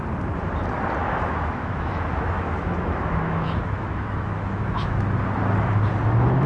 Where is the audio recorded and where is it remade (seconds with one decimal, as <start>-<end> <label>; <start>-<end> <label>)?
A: 0.0-1.0 recorded; 1.0-4.9 remade; 4.9-6.5 recorded